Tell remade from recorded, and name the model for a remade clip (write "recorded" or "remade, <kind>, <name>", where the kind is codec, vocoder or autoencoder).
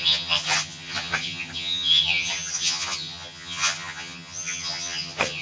remade, vocoder, HiFi-GAN